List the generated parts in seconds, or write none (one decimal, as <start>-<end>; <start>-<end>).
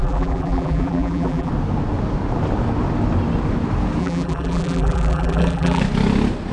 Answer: 0.0-1.5; 4.0-5.8